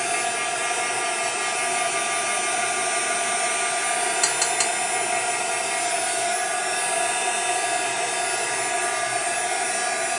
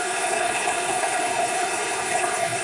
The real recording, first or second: first